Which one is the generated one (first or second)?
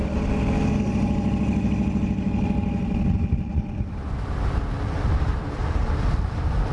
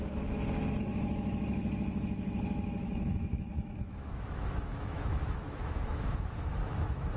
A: second